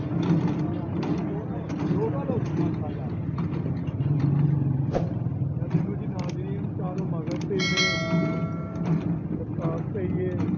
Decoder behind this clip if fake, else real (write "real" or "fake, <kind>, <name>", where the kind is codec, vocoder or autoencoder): real